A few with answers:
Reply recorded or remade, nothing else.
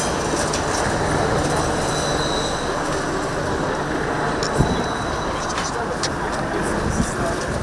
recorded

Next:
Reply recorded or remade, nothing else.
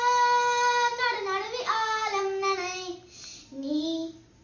recorded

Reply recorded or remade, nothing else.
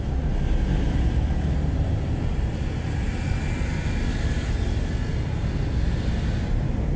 recorded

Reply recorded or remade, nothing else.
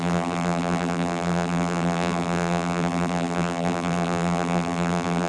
remade